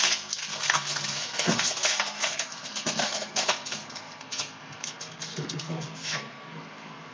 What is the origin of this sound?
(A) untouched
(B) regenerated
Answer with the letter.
B